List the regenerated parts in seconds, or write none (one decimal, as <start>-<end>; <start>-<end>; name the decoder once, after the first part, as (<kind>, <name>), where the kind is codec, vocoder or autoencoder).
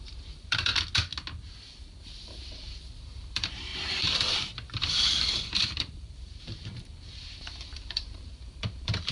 0.0-0.7 (vocoder, BigVGAN v2); 2.0-9.1